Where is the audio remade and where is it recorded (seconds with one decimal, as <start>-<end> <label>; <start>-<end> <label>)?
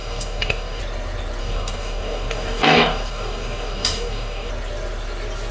0.0-0.8 remade; 0.8-1.4 recorded; 1.4-4.5 remade; 4.5-5.5 recorded